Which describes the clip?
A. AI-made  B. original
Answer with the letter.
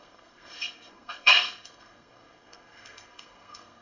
A